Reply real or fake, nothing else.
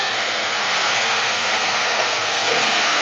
fake